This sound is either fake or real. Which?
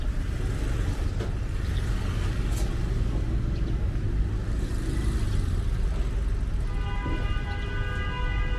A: real